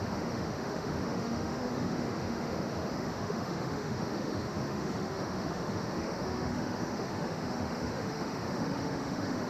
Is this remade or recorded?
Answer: remade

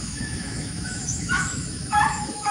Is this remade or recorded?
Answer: remade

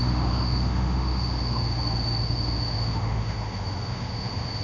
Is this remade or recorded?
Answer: remade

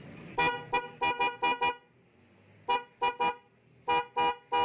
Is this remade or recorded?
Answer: recorded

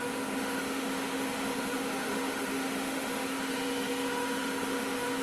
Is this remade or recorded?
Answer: remade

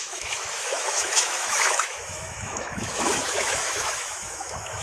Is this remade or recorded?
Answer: remade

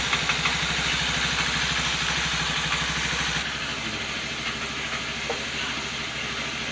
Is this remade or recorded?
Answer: recorded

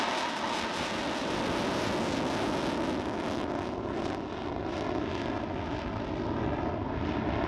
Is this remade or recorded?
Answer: recorded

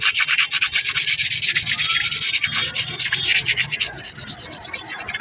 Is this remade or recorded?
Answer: recorded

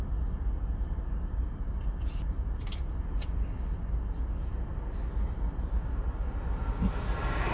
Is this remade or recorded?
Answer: recorded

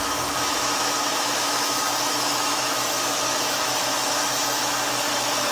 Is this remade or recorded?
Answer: remade